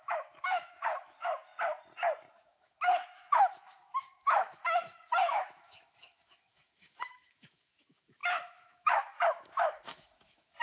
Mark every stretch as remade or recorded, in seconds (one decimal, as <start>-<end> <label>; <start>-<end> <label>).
0.0-1.5 remade; 1.5-2.3 recorded; 2.3-10.6 remade